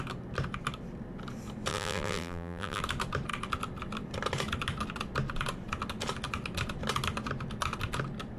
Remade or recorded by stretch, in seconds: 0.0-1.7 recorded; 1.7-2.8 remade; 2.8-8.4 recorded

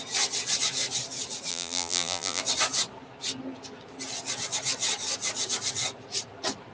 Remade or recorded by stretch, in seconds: 0.0-1.5 recorded; 1.5-2.4 remade; 2.4-6.7 recorded

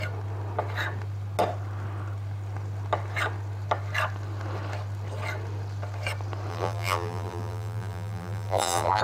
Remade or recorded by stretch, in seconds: 0.0-6.5 recorded; 6.5-9.0 remade

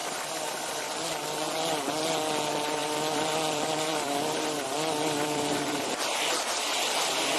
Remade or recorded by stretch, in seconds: 0.0-1.1 remade; 1.1-2.8 recorded; 2.8-6.0 remade; 6.0-7.4 recorded

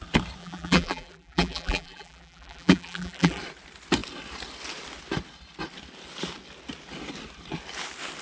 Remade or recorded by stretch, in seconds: 0.0-0.4 recorded; 0.4-3.4 remade; 3.4-8.2 recorded

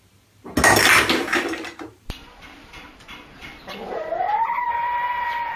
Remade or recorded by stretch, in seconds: 0.0-1.3 recorded; 1.3-4.7 remade; 4.7-5.6 recorded

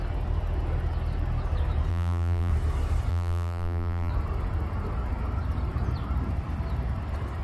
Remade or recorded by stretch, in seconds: 0.0-1.9 recorded; 1.9-2.5 remade; 2.5-3.1 recorded; 3.1-4.1 remade; 4.1-7.4 recorded

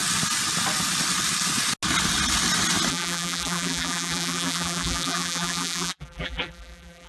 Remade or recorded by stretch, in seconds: 0.0-2.9 recorded; 2.9-7.1 remade